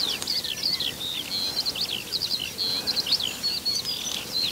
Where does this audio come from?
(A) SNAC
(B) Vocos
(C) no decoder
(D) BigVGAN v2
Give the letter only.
C